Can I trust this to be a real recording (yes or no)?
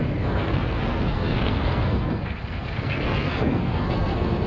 no